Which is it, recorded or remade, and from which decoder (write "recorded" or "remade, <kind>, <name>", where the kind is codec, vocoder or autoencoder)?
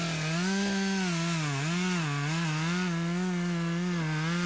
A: recorded